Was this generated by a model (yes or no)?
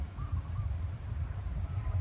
no